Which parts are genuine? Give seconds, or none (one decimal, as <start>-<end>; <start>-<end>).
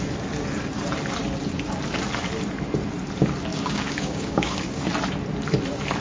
0.0-3.5; 4.9-6.0